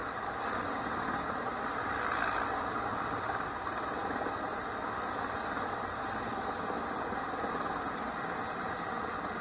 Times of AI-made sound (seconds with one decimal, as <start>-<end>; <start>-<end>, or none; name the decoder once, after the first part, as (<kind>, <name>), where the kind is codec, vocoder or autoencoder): none